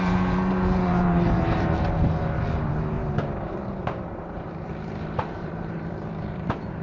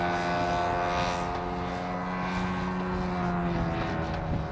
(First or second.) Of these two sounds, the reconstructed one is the first